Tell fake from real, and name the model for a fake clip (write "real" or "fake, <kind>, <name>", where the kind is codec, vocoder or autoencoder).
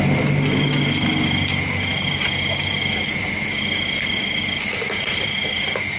real